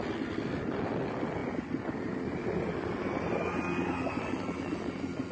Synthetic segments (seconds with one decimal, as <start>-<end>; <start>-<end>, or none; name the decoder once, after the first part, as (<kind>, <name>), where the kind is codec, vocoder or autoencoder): none